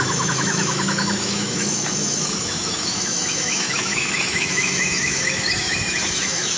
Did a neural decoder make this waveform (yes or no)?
yes